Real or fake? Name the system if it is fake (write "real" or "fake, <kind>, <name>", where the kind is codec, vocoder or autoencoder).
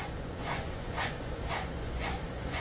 fake, vocoder, Vocos